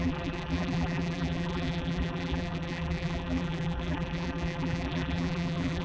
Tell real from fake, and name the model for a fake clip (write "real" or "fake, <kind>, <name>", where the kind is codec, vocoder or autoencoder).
fake, vocoder, BigVGAN v2